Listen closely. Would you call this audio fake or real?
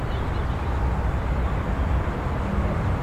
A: real